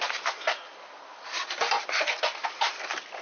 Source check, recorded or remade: recorded